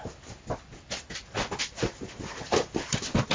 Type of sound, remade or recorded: recorded